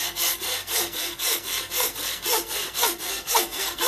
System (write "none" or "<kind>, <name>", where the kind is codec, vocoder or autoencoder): codec, SNAC